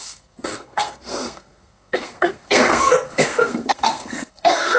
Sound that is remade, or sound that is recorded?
remade